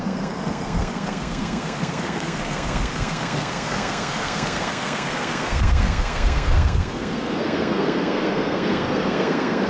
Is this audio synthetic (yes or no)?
yes